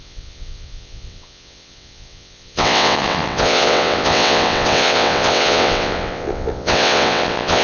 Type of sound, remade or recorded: remade